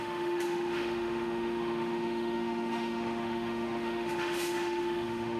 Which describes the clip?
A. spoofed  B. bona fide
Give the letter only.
A